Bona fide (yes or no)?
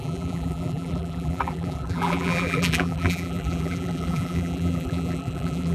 no